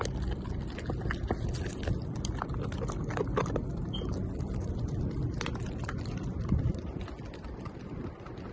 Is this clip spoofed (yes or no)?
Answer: no